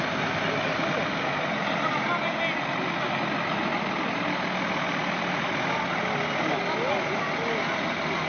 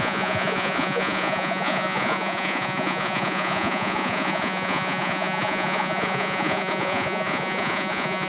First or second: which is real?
first